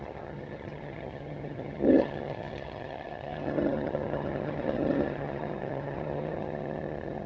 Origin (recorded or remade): remade